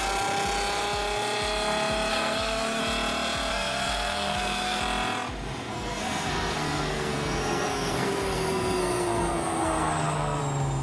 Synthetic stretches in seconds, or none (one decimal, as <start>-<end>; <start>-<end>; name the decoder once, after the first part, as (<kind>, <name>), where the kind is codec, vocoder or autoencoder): 2.1-2.8 (codec, SNAC); 3.5-4.8; 5.7-10.4